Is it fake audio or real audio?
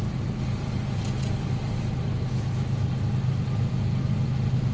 real